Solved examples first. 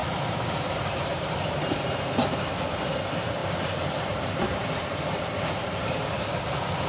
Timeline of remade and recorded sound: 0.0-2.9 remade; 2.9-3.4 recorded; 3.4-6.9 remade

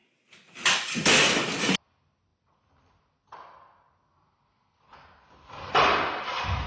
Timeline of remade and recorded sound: 0.0-6.7 recorded

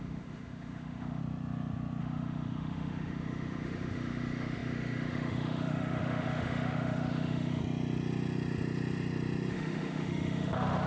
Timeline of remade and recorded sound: 0.0-1.2 remade; 1.2-2.0 recorded; 2.0-7.6 remade; 7.6-9.5 recorded; 9.5-10.9 remade

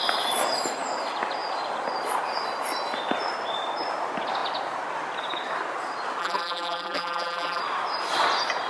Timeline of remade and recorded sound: 0.0-6.2 recorded; 6.2-7.6 remade; 7.6-8.7 recorded